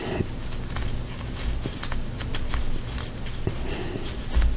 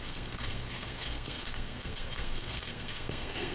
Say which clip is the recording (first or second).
first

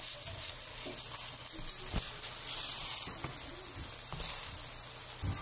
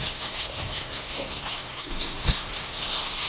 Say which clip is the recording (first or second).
first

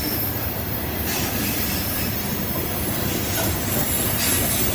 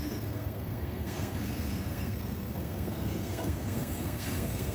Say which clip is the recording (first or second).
first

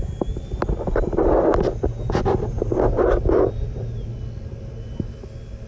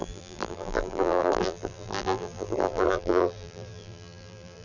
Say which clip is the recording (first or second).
first